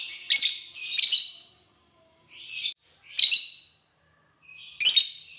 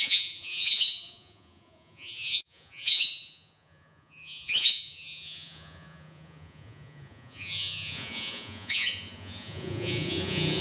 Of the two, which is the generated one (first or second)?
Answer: second